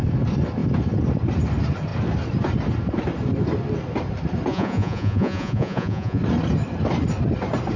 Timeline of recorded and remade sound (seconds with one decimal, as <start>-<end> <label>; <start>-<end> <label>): 0.0-4.5 recorded; 4.5-6.2 remade; 6.2-7.8 recorded